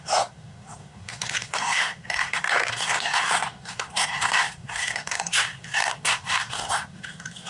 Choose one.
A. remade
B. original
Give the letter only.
A